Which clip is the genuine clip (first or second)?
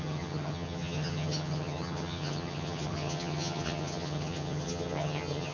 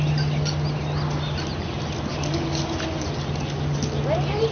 second